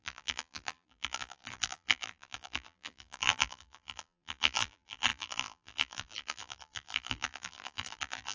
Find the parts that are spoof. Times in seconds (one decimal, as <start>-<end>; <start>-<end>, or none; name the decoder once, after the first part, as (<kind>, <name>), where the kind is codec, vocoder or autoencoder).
0.0-8.3 (vocoder, BigVGAN v2)